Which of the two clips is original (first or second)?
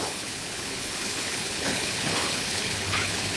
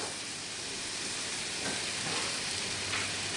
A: second